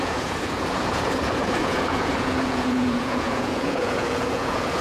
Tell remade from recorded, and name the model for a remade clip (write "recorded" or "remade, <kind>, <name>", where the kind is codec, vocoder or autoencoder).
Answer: remade, vocoder, Vocos